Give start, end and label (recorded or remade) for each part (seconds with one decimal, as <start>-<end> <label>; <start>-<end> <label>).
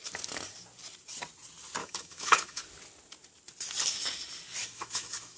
0.0-1.8 recorded; 1.8-2.6 remade; 2.6-4.6 recorded; 4.6-5.4 remade